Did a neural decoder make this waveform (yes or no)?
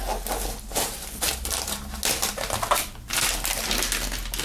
no